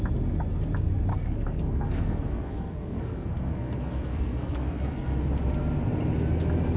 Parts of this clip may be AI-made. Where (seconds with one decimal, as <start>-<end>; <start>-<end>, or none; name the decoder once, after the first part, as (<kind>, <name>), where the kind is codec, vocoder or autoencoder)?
1.1-5.2 (codec, SNAC)